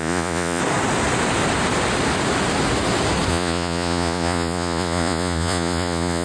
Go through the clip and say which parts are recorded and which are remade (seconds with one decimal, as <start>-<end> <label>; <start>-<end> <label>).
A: 0.0-0.6 remade; 0.6-3.3 recorded; 3.3-6.2 remade